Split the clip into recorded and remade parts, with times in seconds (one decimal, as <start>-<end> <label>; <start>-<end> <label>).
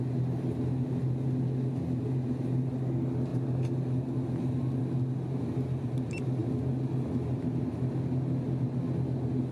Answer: 0.0-9.5 recorded